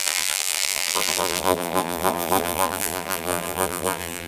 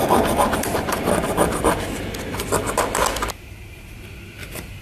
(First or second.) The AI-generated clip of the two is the first